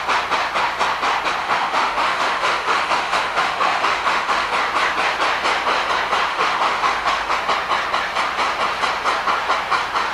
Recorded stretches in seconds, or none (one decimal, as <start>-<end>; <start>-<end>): 0.0-1.4; 4.5-6.3; 7.4-10.1